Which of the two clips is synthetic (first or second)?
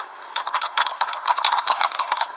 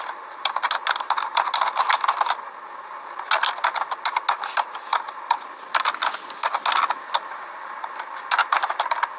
first